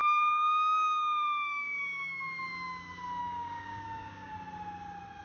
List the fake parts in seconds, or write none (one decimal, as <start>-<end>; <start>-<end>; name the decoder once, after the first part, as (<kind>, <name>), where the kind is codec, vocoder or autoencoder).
0.0-2.2 (codec, DAC); 3.2-4.3